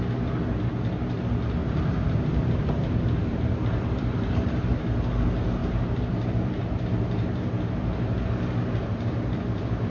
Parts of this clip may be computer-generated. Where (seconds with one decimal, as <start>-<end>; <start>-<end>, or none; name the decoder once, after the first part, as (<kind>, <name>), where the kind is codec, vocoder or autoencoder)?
1.6-4.8 (vocoder, BigVGAN v2); 5.6-9.9